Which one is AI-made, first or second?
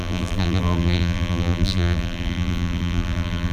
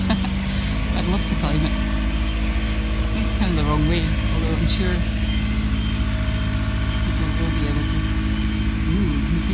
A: first